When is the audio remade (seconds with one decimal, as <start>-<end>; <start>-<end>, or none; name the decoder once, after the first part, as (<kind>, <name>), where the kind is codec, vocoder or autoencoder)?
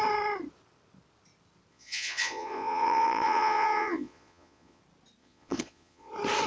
1.7-4.8 (vocoder, Vocos); 5.2-6.1